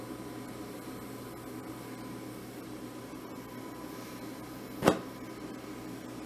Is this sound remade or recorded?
recorded